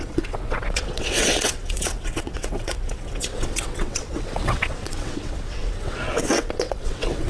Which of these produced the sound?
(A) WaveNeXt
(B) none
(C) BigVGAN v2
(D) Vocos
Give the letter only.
A